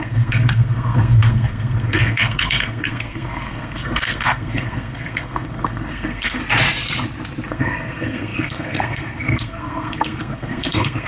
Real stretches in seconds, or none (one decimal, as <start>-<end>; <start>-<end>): 6.4-7.5